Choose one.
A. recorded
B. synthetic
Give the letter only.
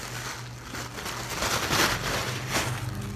A